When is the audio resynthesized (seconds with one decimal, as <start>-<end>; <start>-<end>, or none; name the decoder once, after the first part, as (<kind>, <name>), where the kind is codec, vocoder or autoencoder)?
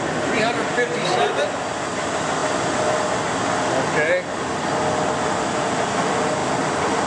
0.0-2.4 (vocoder, BigVGAN v2); 5.4-7.1